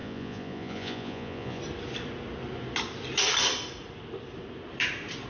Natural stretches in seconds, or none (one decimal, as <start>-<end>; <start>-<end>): 1.6-5.3